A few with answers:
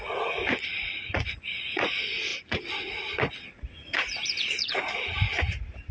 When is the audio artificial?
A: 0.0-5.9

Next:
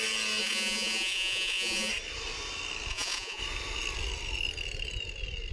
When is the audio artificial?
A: 0.4-1.9; 2.9-3.4

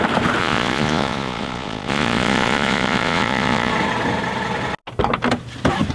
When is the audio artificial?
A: 0.4-3.7

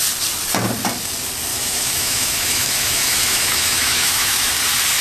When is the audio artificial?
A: 1.5-4.5